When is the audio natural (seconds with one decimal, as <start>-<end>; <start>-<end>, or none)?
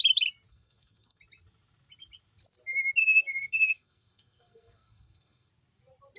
0.0-0.5; 1.2-3.0; 5.5-6.2